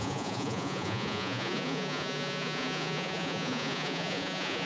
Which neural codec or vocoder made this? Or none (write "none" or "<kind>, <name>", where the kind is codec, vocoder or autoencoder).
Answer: vocoder, Vocos